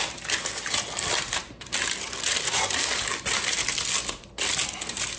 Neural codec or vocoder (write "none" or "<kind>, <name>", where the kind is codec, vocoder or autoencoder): none